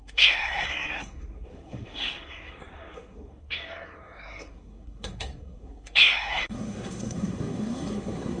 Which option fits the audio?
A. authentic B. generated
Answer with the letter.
B